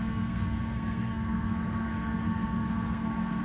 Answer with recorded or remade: remade